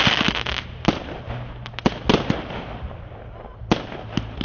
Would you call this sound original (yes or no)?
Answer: yes